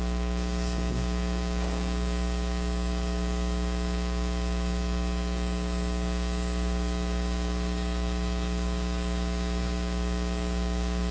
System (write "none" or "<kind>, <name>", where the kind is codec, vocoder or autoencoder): codec, DAC